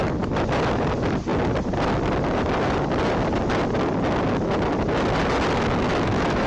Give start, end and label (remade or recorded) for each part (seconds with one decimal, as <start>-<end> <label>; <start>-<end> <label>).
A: 0.0-5.9 recorded; 5.9-6.5 remade